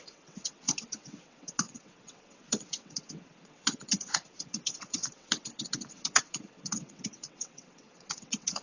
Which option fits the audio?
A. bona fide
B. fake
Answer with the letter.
B